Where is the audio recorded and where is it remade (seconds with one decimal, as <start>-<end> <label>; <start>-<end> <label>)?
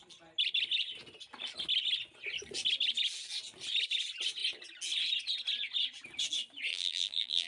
0.0-6.7 recorded; 6.7-7.5 remade